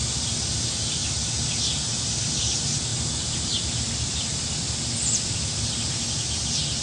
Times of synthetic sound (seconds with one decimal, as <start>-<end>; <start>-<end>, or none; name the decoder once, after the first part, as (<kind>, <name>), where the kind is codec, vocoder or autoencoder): none